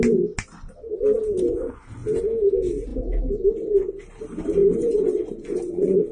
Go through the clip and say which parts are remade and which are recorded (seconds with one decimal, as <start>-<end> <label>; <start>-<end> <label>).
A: 0.0-4.6 recorded; 4.6-6.1 remade